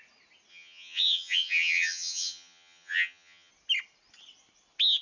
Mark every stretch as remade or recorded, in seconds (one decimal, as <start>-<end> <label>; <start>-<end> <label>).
0.0-0.5 recorded; 0.5-3.5 remade; 3.5-5.0 recorded